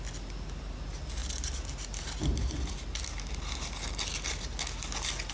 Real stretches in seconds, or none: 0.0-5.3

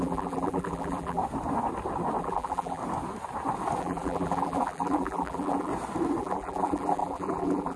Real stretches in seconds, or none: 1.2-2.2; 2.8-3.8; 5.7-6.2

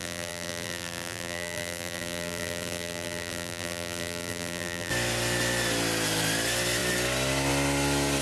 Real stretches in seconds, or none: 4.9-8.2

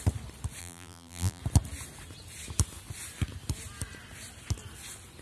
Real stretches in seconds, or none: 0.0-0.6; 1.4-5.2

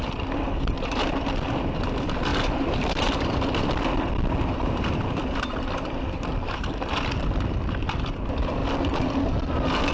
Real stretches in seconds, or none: 8.6-9.9

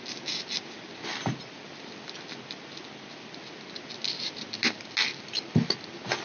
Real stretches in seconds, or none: 0.0-6.2